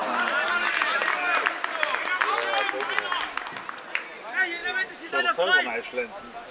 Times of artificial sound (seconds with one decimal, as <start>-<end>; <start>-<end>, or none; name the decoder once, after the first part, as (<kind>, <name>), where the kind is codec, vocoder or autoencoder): 4.6-5.2 (vocoder, BigVGAN v2)